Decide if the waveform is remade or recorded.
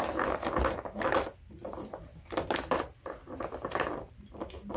recorded